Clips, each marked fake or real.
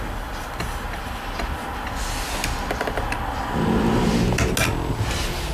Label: real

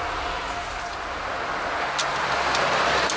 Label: real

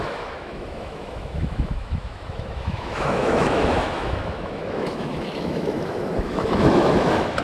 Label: fake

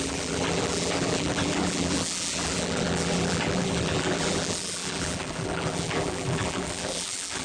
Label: fake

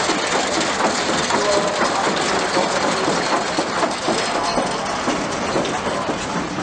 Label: real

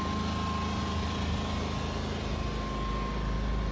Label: real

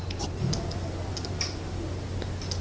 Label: real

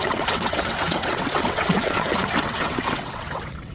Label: fake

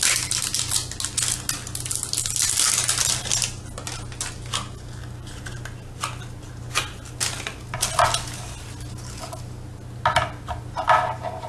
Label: real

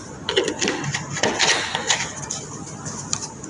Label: real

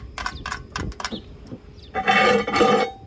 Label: real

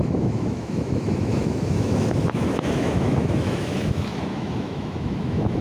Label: fake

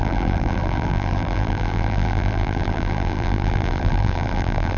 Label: fake